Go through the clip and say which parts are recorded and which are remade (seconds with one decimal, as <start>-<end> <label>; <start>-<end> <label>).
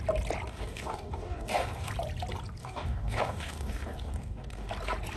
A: 0.0-0.5 recorded; 0.5-1.9 remade; 1.9-2.6 recorded; 2.6-4.7 remade; 4.7-5.2 recorded